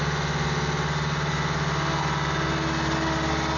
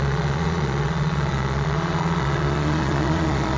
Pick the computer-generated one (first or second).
second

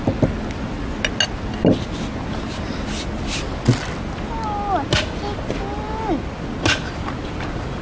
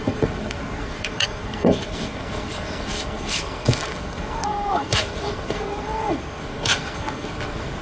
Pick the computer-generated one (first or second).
second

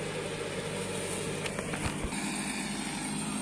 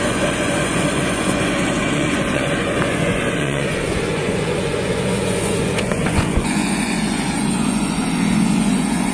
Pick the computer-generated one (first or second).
second